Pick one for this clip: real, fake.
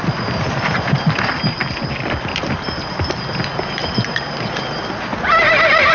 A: real